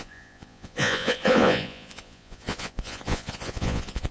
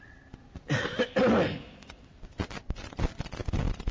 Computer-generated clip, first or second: first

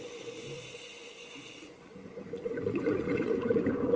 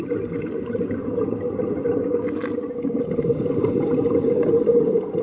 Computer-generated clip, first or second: first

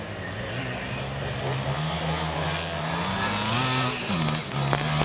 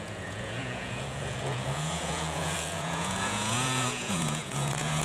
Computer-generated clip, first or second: second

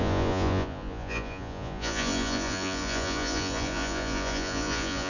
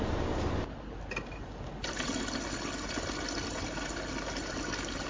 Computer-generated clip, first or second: first